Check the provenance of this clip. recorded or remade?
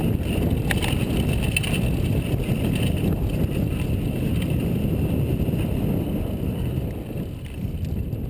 recorded